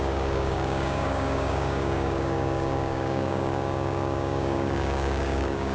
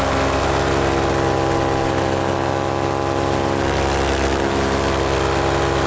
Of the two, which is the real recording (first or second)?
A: second